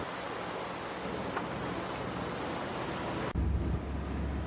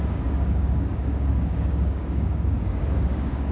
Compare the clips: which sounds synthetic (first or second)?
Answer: second